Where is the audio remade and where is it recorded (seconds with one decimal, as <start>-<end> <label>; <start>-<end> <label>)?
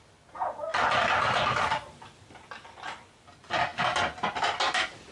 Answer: 0.0-5.1 recorded